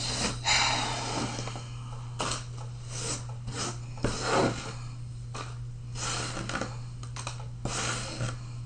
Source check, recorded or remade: recorded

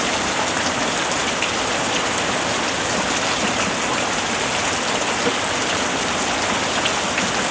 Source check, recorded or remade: recorded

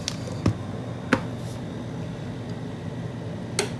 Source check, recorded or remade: recorded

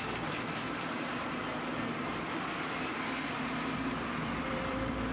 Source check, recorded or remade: remade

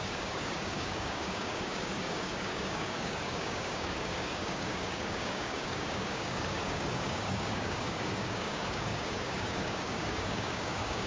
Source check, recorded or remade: remade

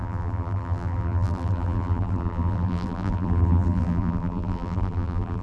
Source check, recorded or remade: remade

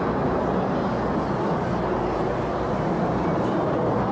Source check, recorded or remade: recorded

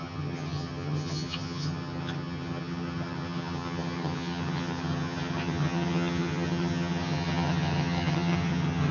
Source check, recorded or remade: remade